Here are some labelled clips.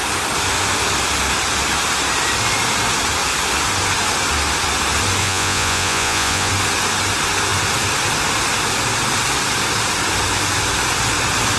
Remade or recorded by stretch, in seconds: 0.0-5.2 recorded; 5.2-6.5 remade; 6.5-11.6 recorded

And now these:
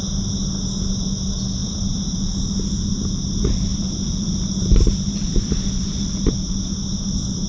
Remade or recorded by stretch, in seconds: 0.0-1.6 recorded; 1.6-2.9 remade; 2.9-3.7 recorded; 3.7-6.1 remade; 6.1-7.5 recorded